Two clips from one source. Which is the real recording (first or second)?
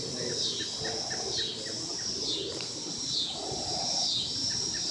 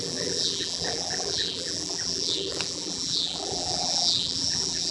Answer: first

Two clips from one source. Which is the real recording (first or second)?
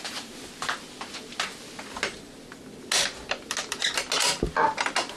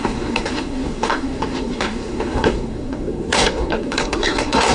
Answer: first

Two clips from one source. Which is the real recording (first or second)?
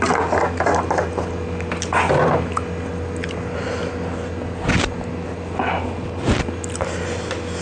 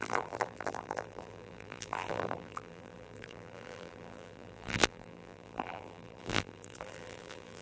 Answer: first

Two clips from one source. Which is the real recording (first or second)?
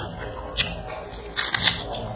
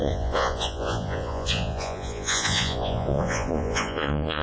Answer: first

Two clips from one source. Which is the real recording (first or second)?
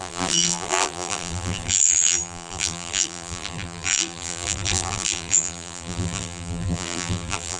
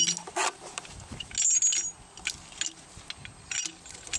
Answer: second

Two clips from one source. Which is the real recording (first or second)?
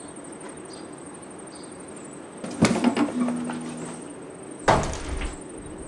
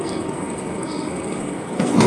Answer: first